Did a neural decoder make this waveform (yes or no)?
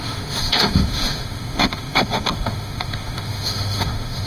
yes